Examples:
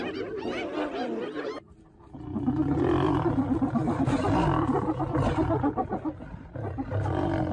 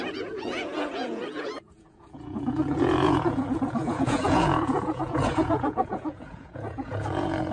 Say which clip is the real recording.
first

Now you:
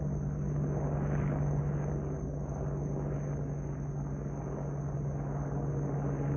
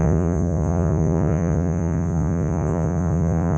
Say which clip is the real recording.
first